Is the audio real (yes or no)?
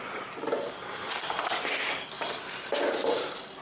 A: yes